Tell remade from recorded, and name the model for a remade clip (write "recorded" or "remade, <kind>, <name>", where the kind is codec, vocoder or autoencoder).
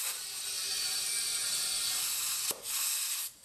recorded